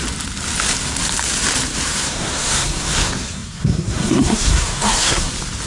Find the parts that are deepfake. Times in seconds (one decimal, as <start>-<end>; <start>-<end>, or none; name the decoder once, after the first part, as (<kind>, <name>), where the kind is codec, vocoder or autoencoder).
1.9-5.3 (codec, SNAC)